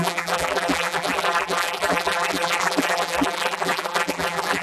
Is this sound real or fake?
fake